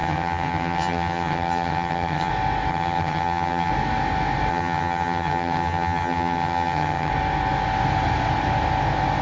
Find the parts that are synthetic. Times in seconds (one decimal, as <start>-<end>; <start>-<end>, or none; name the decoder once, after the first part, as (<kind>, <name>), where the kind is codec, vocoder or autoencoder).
0.0-2.3 (vocoder, HiFi-GAN); 2.7-3.7; 4.5-7.1